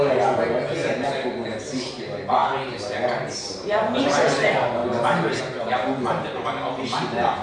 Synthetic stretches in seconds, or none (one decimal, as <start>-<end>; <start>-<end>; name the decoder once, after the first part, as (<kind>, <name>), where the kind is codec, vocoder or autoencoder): 0.8-1.3 (vocoder, BigVGAN v2)